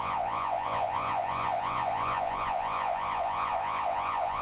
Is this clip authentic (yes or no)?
no